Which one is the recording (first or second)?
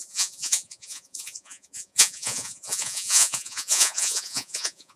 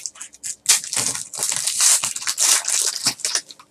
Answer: second